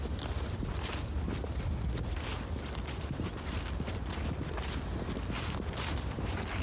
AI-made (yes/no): no